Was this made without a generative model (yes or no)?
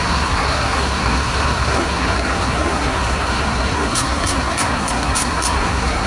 no